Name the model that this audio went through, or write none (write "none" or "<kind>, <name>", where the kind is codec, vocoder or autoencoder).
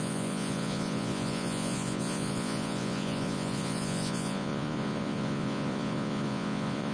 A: vocoder, Vocos